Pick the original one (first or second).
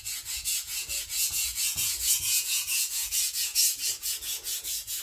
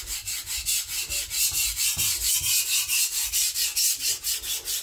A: second